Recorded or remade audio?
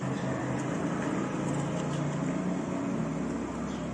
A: recorded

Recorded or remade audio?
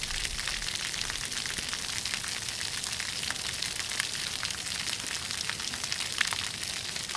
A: recorded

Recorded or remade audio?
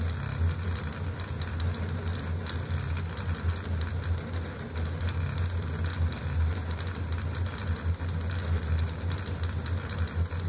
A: recorded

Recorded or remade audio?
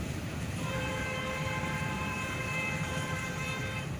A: remade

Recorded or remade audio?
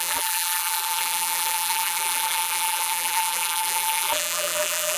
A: remade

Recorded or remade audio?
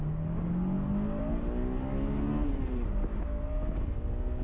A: recorded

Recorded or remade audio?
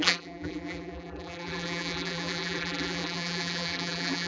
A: remade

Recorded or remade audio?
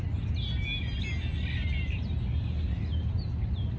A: recorded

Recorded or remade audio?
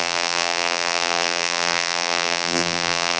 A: remade